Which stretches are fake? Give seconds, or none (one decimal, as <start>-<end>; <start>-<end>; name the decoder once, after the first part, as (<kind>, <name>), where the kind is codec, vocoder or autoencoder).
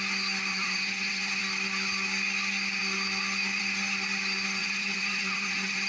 0.5-1.4 (vocoder, HiFi-GAN); 4.6-5.9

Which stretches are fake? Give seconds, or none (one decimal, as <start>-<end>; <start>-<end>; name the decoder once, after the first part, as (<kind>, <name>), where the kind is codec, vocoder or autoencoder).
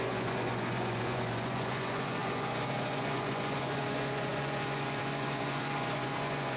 0.0-6.6 (vocoder, Vocos)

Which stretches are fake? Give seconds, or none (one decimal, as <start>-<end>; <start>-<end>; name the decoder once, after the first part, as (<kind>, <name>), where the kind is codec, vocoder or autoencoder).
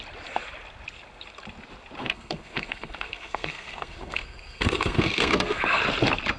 2.0-5.8 (codec, SNAC)